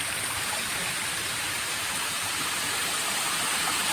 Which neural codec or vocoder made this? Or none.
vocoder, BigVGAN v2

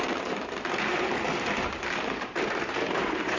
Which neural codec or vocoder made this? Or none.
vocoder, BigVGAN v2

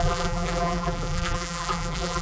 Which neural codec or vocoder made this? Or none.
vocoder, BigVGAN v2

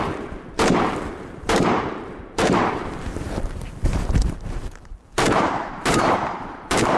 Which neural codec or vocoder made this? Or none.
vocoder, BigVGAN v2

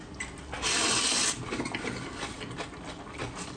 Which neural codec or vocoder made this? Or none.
none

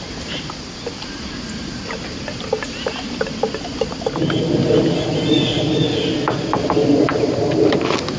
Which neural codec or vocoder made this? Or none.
none